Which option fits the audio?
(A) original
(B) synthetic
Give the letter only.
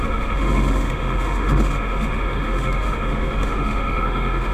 B